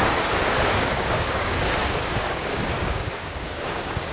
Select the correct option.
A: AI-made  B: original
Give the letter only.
A